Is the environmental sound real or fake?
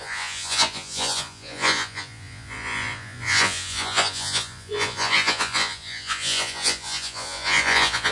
fake